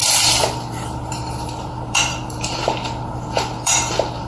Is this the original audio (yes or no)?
no